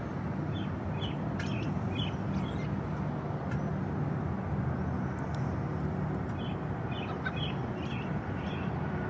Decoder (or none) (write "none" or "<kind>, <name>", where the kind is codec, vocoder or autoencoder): none